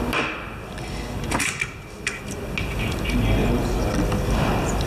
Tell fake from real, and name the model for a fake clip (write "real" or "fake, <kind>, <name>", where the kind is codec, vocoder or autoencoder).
real